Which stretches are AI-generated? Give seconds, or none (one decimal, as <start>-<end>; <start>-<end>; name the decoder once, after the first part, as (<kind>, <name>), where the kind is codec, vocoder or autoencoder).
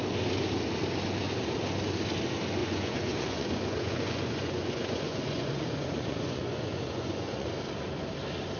2.6-7.5 (vocoder, Vocos)